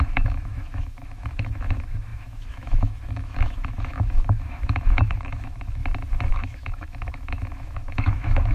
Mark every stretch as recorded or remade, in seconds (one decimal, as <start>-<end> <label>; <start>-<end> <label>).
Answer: 0.0-5.8 remade; 5.8-6.3 recorded; 6.3-8.5 remade